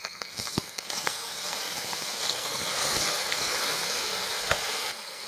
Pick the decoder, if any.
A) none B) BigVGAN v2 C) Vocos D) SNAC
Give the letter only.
D